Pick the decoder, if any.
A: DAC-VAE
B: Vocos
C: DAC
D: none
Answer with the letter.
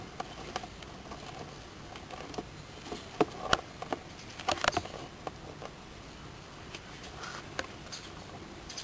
D